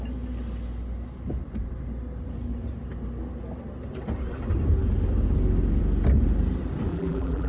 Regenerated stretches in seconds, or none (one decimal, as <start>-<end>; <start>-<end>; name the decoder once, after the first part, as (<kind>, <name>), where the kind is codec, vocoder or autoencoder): 6.9-7.5 (vocoder, BigVGAN v2)

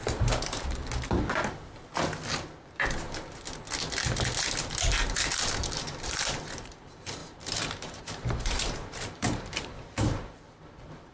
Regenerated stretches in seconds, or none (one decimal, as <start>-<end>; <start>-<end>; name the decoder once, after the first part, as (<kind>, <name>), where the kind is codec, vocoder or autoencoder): 0.0-0.8 (vocoder, BigVGAN v2); 5.7-11.1

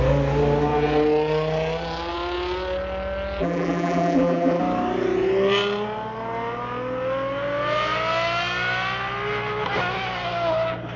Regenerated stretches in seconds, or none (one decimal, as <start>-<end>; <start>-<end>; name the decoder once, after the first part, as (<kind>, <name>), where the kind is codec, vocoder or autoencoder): 3.4-4.6 (vocoder, BigVGAN v2)